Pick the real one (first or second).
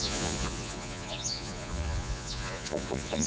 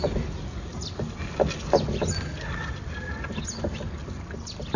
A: second